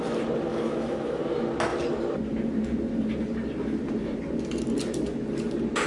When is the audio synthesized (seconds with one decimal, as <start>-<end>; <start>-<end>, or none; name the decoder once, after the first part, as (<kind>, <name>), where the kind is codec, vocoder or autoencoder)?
0.5-1.2 (autoencoder, DAC-VAE)